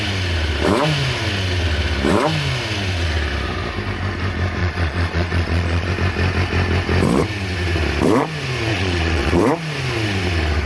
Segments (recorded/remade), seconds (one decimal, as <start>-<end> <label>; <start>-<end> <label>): 0.0-4.6 recorded; 4.6-5.9 remade; 5.9-8.7 recorded; 8.7-9.4 remade; 9.4-10.7 recorded